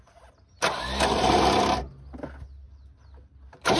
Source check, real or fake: real